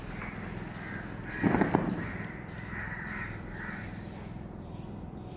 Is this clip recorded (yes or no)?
yes